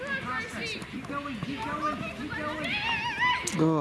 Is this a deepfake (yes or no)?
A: no